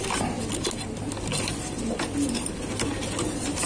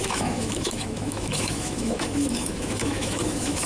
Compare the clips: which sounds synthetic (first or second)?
second